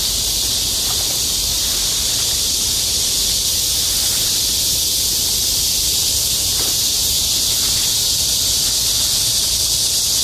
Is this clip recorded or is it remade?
recorded